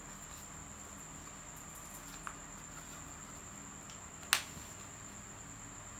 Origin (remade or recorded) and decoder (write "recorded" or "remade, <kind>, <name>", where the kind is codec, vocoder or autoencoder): recorded